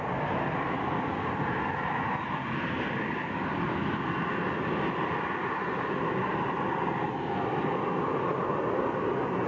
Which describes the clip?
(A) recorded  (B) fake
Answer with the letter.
A